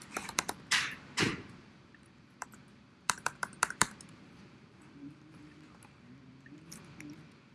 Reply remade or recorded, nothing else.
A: remade